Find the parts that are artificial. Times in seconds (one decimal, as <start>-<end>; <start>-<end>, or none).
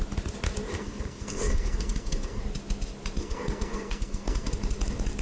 0.8-2.4; 3.2-4.5